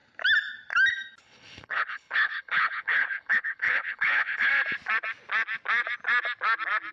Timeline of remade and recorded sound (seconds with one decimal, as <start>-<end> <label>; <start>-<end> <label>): 0.0-1.2 recorded; 1.2-4.5 remade; 4.5-6.9 recorded